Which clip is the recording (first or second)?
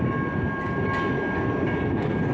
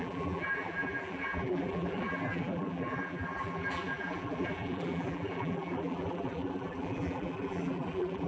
first